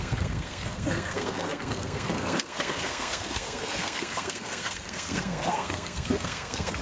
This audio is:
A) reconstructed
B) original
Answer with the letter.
A